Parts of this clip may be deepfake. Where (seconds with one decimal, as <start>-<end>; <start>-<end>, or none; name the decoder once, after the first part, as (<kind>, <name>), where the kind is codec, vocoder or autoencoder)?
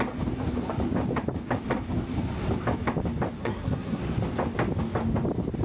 3.4-4.0 (codec, SNAC)